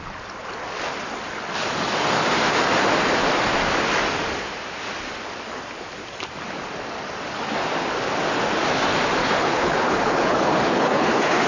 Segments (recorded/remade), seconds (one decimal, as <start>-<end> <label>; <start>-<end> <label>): 0.0-9.2 recorded; 9.2-11.5 remade